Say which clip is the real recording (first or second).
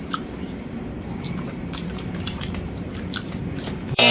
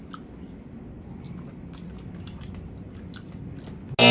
second